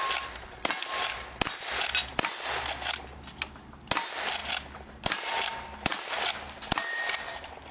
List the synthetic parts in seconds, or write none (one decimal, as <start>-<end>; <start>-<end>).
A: none